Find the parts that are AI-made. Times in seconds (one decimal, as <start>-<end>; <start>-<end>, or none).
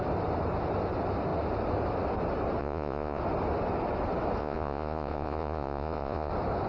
2.6-3.2; 4.4-6.3